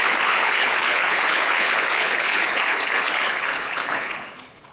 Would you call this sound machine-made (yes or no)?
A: yes